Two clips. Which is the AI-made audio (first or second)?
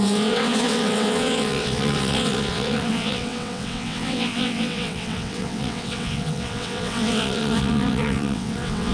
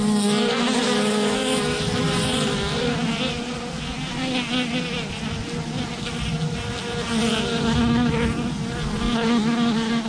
first